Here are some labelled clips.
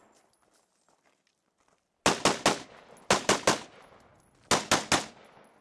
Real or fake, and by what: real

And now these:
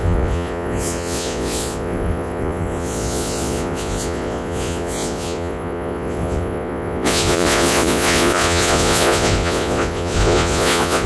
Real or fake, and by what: fake, vocoder, Vocos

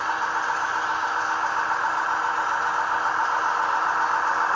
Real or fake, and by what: real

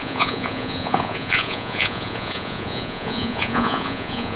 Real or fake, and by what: fake, vocoder, Vocos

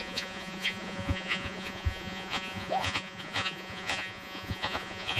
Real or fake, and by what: fake, vocoder, Vocos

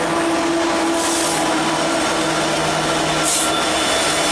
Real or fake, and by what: real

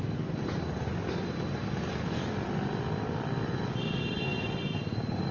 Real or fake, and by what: real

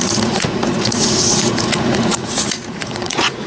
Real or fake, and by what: fake, vocoder, Vocos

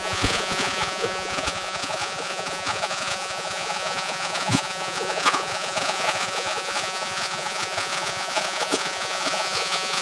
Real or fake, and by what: fake, vocoder, Vocos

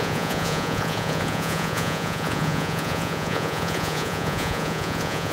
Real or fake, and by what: fake, vocoder, Vocos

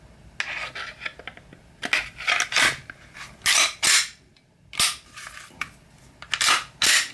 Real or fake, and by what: real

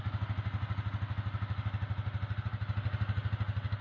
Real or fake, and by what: real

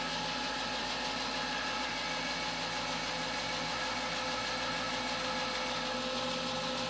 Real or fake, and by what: real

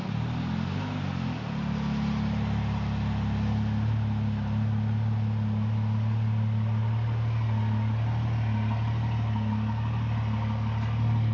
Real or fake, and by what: real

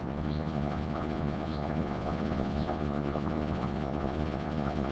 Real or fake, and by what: fake, vocoder, Vocos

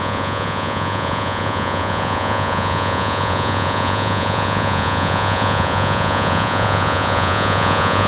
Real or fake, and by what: fake, vocoder, Vocos